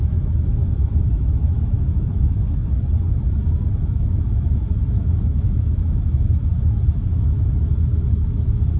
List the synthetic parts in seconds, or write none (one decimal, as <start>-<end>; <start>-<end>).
0.0-2.6; 3.8-8.8